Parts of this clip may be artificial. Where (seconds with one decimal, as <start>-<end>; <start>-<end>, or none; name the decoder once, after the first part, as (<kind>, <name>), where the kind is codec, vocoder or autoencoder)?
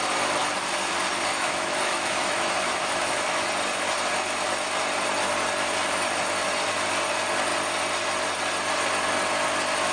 1.3-3.5 (autoencoder, DAC-VAE)